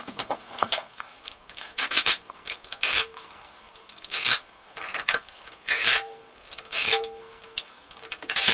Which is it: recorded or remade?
remade